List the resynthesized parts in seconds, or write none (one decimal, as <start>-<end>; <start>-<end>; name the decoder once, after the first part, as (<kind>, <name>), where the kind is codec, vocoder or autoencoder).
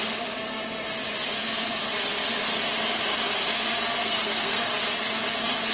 4.0-4.7 (codec, SNAC)